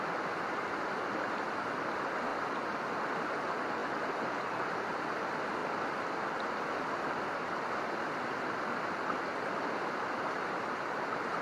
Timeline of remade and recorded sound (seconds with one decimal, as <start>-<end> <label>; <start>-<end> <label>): 0.0-11.4 recorded